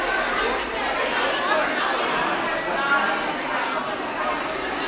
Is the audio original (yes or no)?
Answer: yes